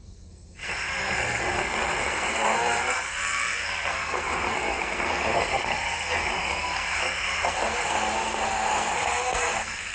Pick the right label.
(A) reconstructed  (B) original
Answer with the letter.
A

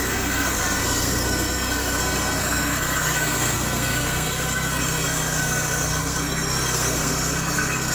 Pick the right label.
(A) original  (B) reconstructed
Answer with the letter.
B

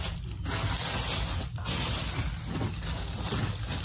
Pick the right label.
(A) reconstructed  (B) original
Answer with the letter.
B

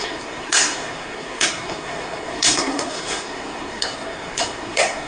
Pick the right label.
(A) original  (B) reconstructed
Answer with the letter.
B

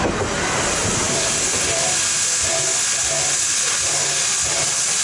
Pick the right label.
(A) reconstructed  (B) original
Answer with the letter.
B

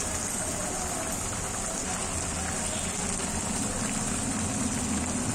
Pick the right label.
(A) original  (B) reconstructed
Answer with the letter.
A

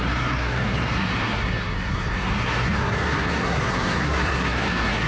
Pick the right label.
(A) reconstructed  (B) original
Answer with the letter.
A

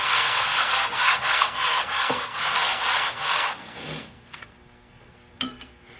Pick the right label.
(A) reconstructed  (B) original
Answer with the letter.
A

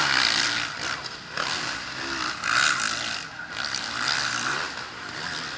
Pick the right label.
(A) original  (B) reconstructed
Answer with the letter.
A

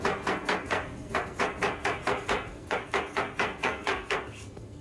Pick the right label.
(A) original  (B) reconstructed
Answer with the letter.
B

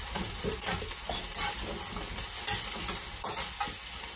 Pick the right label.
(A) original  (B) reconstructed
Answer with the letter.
A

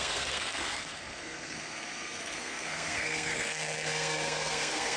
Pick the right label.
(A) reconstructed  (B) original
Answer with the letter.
A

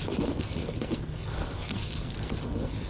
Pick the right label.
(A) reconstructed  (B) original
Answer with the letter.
A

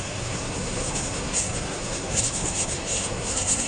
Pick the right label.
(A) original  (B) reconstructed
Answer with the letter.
B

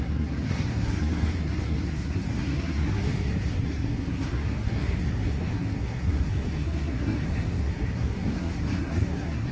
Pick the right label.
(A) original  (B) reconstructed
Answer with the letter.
B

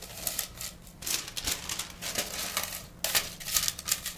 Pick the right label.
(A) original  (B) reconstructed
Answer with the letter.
A